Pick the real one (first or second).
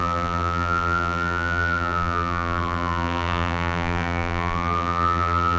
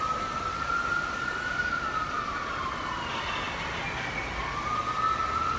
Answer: second